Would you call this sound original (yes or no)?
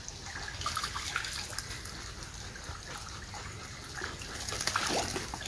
yes